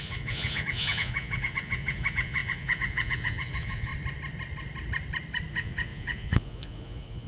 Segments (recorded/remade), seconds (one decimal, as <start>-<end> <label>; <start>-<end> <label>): 0.0-3.9 remade; 3.9-5.5 recorded; 5.5-7.3 remade